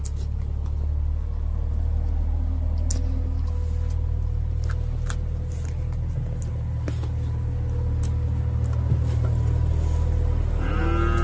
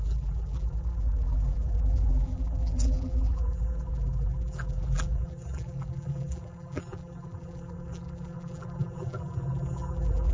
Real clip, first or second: first